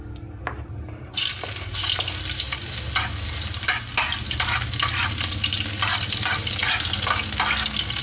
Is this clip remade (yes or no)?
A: no